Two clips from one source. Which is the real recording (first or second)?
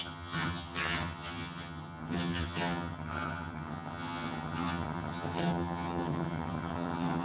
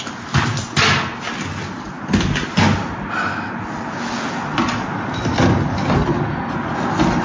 second